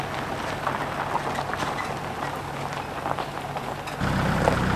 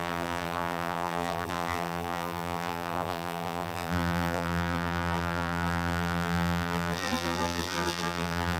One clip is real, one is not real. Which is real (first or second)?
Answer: first